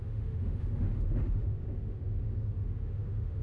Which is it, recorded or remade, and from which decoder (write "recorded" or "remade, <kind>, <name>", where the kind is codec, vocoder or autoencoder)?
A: remade, autoencoder, DAC-VAE